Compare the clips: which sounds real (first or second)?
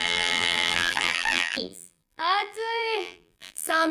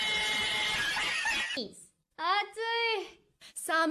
second